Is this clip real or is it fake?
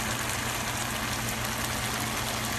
real